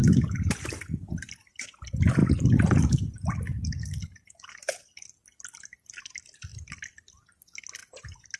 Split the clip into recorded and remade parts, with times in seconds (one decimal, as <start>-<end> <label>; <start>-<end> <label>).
0.0-2.2 recorded; 2.2-3.1 remade; 3.1-6.5 recorded; 6.5-7.1 remade; 7.1-7.8 recorded; 7.8-8.4 remade